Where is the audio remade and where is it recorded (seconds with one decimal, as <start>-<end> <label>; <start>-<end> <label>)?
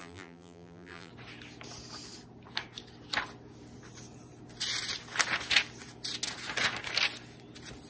0.0-1.1 remade; 1.1-7.9 recorded